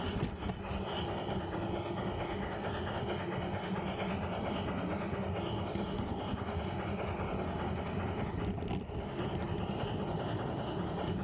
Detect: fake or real real